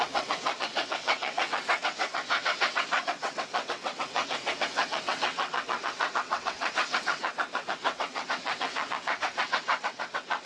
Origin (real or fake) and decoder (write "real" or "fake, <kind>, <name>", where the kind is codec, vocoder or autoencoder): fake, vocoder, WaveNeXt